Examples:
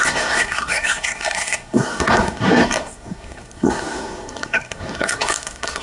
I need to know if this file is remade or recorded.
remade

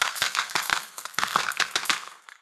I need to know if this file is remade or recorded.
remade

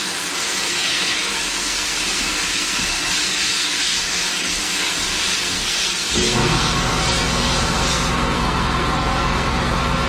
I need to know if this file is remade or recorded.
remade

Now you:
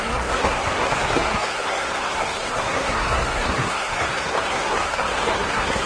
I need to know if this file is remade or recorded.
remade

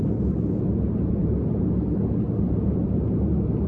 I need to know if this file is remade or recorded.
recorded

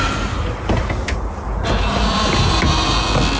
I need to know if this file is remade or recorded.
recorded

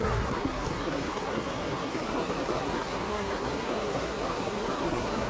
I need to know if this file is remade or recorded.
remade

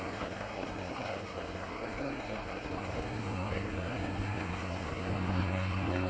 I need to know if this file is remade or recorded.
remade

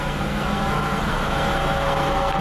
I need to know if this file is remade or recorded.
remade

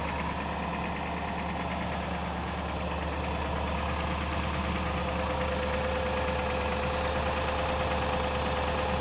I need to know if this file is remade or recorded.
recorded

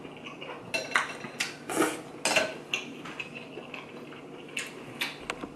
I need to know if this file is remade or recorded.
recorded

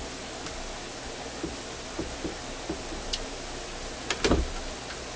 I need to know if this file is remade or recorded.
recorded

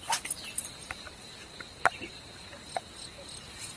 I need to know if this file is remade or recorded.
recorded